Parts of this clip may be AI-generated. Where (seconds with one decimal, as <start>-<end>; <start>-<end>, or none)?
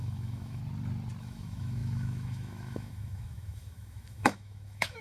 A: 0.0-0.6; 1.2-5.0